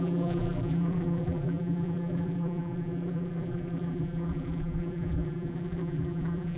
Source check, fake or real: fake